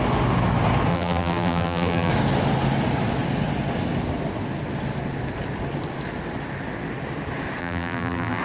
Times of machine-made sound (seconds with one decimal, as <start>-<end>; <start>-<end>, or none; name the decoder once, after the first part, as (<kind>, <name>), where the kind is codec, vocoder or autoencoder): 0.9-2.1 (vocoder, BigVGAN v2); 7.6-8.4